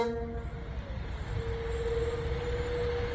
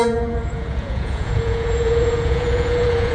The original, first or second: first